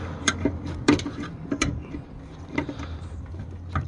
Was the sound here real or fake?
fake